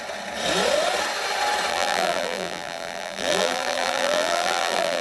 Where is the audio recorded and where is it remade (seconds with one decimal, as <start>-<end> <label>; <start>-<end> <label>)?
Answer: 0.0-1.7 recorded; 1.7-5.0 remade